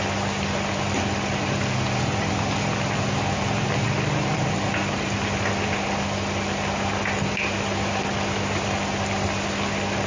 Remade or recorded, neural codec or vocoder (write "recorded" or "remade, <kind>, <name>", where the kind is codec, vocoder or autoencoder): recorded